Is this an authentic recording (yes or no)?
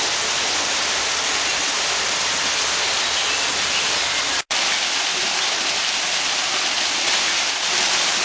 yes